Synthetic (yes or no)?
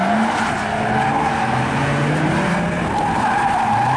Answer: no